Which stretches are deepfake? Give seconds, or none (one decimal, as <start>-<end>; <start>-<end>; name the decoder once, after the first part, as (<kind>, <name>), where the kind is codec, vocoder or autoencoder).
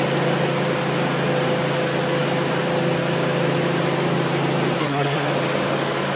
4.8-5.3 (codec, SNAC)